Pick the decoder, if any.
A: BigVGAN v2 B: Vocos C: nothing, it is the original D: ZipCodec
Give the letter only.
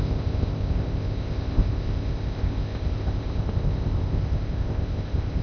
D